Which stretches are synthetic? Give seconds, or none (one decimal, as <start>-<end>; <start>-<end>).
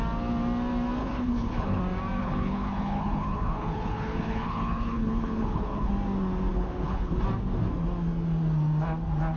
1.0-1.8; 2.2-5.9; 6.5-7.2